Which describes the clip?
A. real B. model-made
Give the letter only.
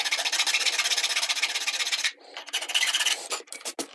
A